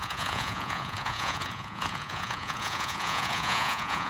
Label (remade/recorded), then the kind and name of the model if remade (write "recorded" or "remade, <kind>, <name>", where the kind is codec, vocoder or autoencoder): remade, vocoder, Vocos